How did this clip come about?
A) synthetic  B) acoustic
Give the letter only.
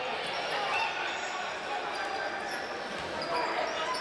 B